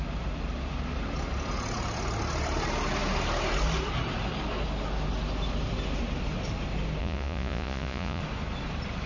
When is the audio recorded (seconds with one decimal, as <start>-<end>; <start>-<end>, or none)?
0.0-7.0; 8.2-9.1